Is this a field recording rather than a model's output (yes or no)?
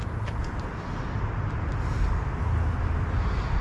yes